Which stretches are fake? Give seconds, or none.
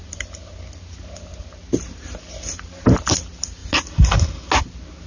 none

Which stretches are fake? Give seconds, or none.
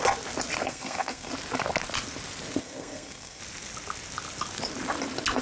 0.6-1.3; 2.6-3.4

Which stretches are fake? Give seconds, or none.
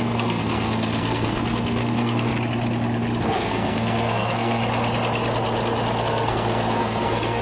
0.0-2.3; 3.2-4.6; 6.0-7.4